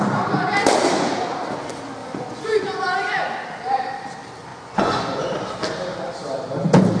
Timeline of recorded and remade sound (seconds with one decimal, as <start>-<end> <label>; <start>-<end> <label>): 0.0-2.0 recorded; 2.0-2.6 remade; 2.6-4.5 recorded; 4.5-5.3 remade; 5.3-7.0 recorded